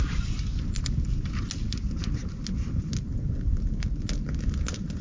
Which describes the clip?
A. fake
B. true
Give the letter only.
B